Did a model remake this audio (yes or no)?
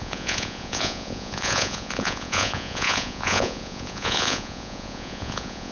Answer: yes